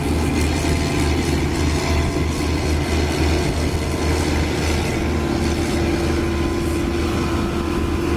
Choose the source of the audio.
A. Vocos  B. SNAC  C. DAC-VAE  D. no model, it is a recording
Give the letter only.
D